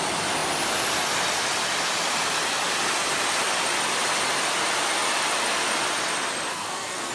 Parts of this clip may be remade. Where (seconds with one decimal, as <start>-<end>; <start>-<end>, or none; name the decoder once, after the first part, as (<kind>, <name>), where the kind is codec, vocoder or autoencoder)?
6.5-7.1 (codec, SNAC)